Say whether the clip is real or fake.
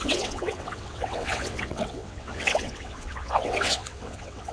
fake